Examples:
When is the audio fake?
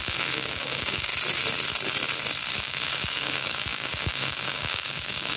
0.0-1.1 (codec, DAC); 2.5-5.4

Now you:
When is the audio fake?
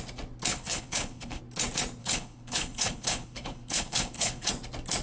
0.5-1.4 (codec, HILCodec); 2.0-4.5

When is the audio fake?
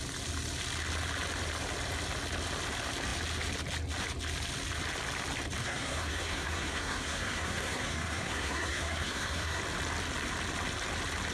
5.6-9.6 (codec, SNAC)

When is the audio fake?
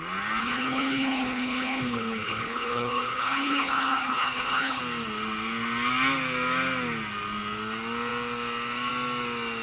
0.4-4.8 (codec, HILCodec)